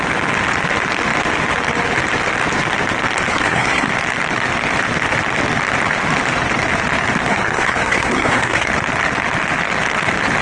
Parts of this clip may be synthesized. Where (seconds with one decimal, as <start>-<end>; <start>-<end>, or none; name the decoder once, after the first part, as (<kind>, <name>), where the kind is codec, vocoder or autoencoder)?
3.3-3.9 (codec, SNAC); 7.3-8.7